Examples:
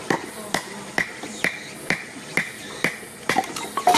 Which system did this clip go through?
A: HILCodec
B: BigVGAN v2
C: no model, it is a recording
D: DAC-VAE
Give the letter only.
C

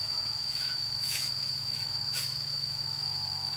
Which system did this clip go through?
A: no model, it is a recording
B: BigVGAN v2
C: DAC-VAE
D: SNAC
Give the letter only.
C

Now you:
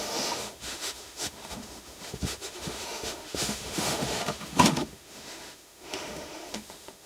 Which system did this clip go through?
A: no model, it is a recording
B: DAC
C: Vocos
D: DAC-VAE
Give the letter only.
D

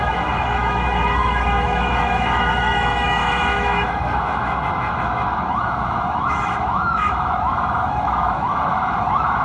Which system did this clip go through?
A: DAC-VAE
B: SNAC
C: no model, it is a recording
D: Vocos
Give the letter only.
A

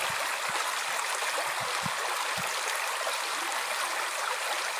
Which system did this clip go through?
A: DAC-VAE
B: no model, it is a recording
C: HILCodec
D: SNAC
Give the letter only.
B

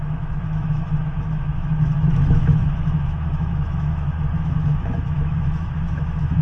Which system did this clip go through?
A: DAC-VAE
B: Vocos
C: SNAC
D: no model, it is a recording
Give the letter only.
A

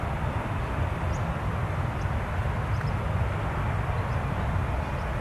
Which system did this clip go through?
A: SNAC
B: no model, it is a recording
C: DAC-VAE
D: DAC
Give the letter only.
B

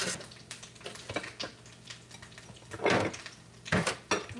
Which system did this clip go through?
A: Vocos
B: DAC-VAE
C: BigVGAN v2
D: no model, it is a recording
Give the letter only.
D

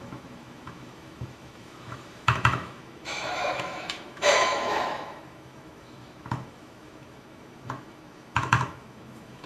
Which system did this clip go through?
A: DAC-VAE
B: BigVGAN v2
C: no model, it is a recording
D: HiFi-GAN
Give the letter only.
A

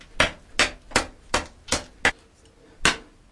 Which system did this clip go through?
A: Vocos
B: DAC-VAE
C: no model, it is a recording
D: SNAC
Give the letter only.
C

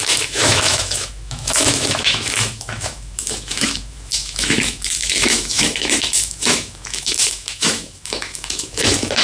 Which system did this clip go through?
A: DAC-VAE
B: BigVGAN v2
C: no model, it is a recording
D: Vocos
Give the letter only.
A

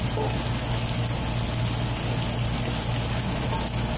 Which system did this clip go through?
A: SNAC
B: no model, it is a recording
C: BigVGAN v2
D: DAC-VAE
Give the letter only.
B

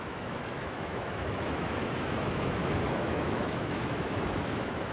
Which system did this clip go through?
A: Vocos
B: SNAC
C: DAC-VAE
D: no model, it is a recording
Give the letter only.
C